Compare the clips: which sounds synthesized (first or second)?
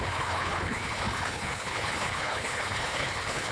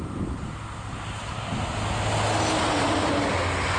first